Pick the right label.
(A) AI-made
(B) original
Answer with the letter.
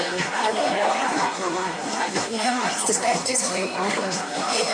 A